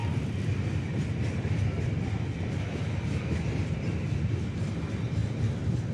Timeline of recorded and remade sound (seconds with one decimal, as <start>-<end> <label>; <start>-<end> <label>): 0.0-3.4 remade; 3.4-5.2 recorded; 5.2-5.9 remade